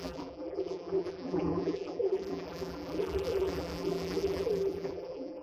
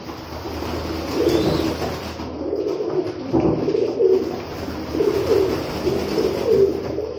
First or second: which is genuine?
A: second